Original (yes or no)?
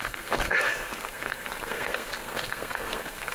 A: no